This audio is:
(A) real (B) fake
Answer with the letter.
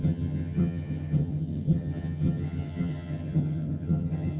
B